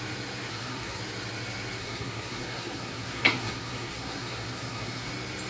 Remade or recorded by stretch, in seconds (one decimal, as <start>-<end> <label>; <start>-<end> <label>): 0.0-0.5 recorded; 0.5-1.0 remade; 1.0-1.8 recorded; 1.8-5.1 remade; 5.1-5.5 recorded